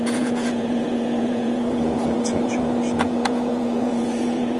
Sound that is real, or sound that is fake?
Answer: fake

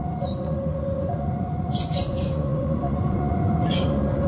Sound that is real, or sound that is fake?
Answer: fake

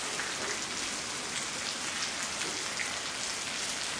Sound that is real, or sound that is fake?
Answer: real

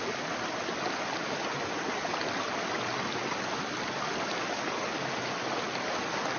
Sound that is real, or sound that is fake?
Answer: real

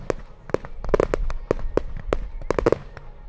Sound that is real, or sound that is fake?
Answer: real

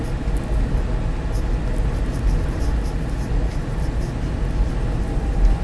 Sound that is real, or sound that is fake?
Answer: real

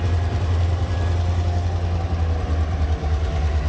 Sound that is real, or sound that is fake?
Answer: real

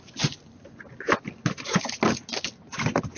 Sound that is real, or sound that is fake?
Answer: real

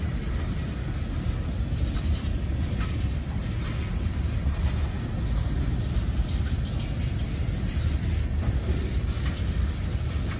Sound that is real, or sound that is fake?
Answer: real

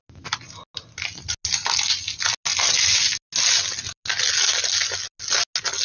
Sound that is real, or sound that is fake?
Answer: real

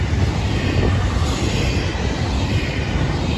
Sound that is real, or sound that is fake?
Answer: real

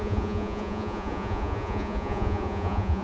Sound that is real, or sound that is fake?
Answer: fake